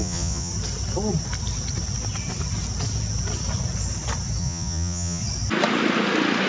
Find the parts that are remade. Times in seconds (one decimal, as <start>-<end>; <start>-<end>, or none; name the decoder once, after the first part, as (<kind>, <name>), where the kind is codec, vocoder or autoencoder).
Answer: 0.0-0.5 (vocoder, Vocos); 4.4-5.2